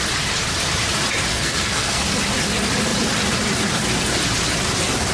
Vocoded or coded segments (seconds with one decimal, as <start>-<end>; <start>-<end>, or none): 1.3-2.0